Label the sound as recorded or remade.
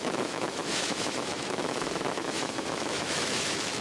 remade